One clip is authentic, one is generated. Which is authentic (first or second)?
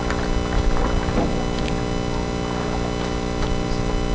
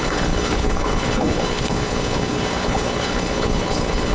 first